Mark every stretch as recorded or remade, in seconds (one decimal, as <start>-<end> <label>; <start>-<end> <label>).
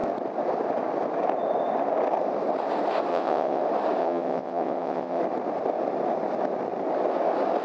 0.0-3.1 recorded; 3.1-3.6 remade; 3.6-4.0 recorded; 4.0-5.2 remade; 5.2-7.6 recorded